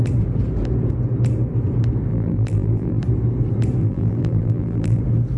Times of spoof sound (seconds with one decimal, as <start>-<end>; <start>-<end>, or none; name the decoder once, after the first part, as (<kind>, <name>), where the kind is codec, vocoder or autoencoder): 2.1-3.0 (vocoder, BigVGAN v2); 3.8-5.0